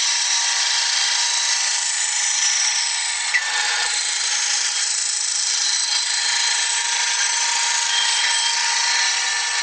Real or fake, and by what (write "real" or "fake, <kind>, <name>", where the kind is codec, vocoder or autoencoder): real